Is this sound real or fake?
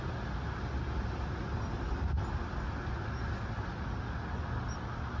real